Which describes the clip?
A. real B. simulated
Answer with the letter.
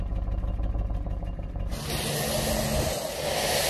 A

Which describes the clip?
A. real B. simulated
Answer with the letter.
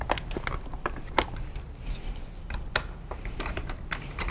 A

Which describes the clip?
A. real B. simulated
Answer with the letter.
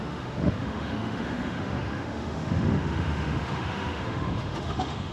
B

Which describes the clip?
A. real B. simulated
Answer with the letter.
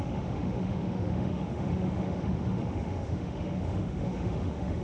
B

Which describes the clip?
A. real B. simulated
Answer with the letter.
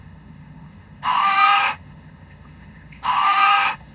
B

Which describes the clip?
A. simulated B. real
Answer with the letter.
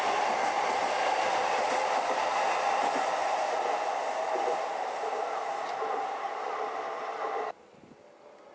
B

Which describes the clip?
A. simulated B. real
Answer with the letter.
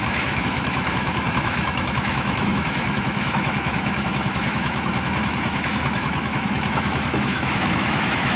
A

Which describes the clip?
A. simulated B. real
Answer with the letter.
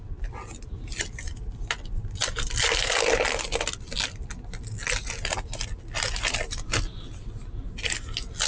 B